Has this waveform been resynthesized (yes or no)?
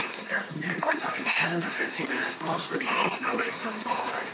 yes